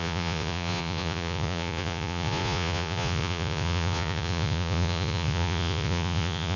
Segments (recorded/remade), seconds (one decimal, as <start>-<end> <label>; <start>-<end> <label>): 0.0-6.6 remade